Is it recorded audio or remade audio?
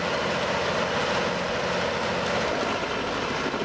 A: recorded